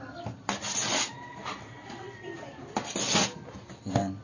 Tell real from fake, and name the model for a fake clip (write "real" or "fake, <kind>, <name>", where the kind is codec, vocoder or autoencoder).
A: real